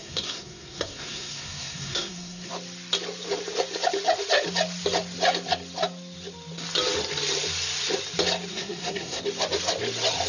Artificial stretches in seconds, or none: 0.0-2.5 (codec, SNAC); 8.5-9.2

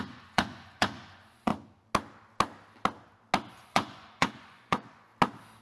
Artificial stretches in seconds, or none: 0.0-1.5 (vocoder, Vocos); 3.5-5.1

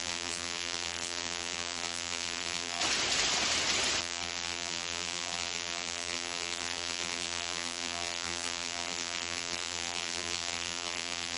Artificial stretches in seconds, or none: 0.0-2.8 (vocoder, BigVGAN v2); 4.0-11.4

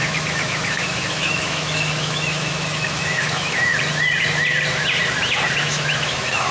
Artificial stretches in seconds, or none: 0.0-3.7 (autoencoder, DAC-VAE); 5.6-6.5

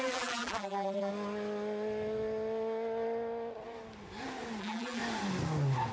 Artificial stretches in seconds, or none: 0.0-1.1 (vocoder, BigVGAN v2); 4.6-5.0

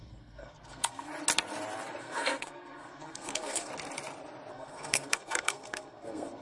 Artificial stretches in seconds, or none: 0.0-1.1 (codec, SNAC); 2.0-3.7; 4.5-6.4